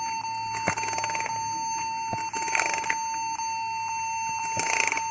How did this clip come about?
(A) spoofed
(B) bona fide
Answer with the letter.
B